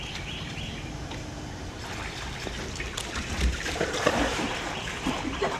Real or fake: fake